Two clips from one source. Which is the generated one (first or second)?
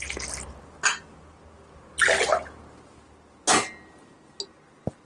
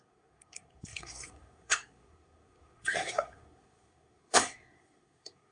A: second